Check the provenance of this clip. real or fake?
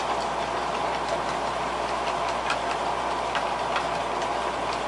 real